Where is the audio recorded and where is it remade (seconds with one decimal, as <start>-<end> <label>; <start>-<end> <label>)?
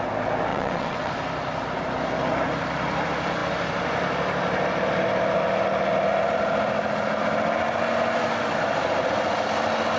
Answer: 0.0-0.5 recorded; 0.5-1.1 remade; 1.1-10.0 recorded